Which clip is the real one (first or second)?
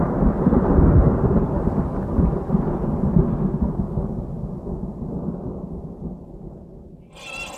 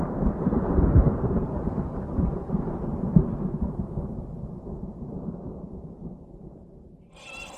first